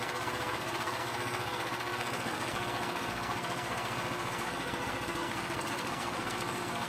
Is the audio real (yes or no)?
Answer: no